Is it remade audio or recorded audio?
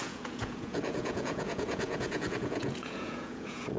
remade